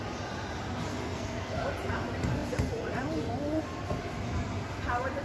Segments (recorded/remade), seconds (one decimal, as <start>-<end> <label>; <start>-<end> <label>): 0.0-0.9 recorded; 0.9-1.5 remade; 1.5-5.2 recorded